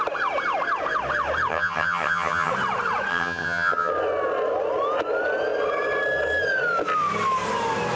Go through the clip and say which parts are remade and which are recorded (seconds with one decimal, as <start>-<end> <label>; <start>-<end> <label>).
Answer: 0.0-1.5 recorded; 1.5-2.5 remade; 2.5-3.1 recorded; 3.1-3.9 remade; 3.9-8.0 recorded

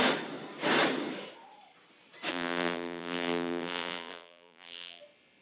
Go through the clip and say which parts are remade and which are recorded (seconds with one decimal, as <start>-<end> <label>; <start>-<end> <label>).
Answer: 0.0-2.3 recorded; 2.3-5.0 remade; 5.0-5.4 recorded

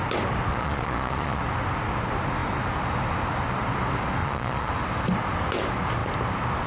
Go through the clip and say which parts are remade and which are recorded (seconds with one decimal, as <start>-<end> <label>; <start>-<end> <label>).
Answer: 0.0-0.5 recorded; 0.5-1.4 remade; 1.4-4.2 recorded; 4.2-4.7 remade; 4.7-6.7 recorded

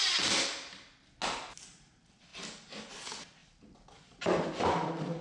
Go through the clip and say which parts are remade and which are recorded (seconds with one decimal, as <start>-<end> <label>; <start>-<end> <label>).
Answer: 0.0-2.3 recorded; 2.3-2.9 remade; 2.9-3.4 recorded; 3.4-5.2 remade

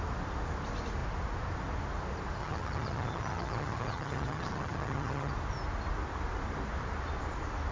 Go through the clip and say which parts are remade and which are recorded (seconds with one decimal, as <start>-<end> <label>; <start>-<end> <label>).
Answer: 0.0-2.4 recorded; 2.4-5.3 remade; 5.3-7.7 recorded